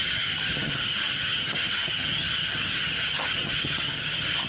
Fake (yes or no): yes